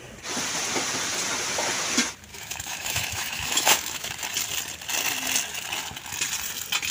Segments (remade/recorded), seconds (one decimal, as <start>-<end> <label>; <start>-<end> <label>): 0.0-2.3 recorded; 2.3-4.1 remade; 4.1-6.9 recorded